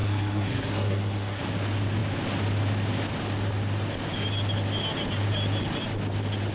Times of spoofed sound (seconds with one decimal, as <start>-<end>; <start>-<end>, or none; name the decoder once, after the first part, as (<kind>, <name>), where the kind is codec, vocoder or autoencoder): 0.0-1.4 (codec, SNAC)